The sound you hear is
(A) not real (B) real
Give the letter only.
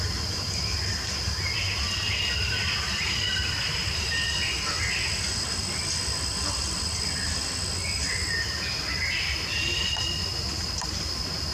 B